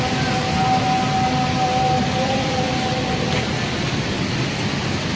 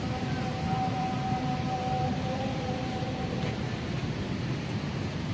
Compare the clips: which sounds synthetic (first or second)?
second